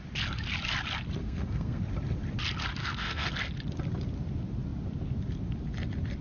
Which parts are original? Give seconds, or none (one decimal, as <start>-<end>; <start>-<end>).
0.0-1.2; 1.8-2.8; 3.3-6.2